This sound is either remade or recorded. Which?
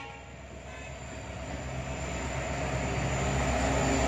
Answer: recorded